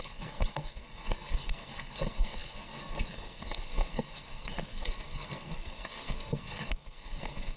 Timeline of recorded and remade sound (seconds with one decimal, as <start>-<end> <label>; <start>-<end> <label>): 0.0-7.6 remade